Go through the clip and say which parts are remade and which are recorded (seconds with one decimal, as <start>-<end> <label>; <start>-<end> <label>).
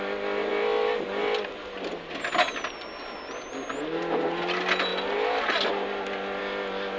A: 0.0-7.0 recorded